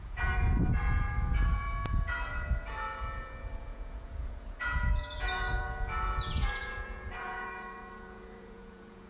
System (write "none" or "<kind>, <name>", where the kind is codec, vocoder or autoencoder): vocoder, Vocos